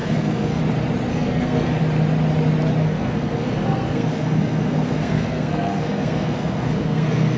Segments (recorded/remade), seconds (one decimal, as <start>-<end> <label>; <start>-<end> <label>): 0.0-0.6 remade; 0.6-1.1 recorded; 1.1-1.8 remade; 1.8-2.8 recorded; 2.8-7.4 remade